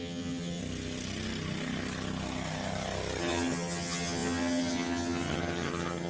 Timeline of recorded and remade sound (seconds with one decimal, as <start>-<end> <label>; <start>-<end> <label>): 0.0-0.6 remade; 0.6-3.2 recorded; 3.2-6.1 remade